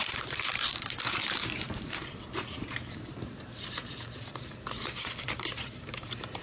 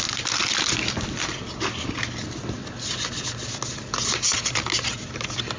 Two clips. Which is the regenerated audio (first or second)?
first